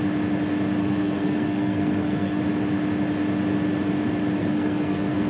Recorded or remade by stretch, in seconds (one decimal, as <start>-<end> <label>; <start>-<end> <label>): 0.0-0.8 recorded; 0.8-2.4 remade; 2.4-4.4 recorded; 4.4-5.3 remade